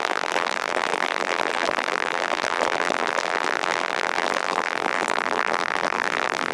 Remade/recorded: remade